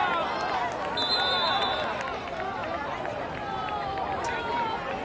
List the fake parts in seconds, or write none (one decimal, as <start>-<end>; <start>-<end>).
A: none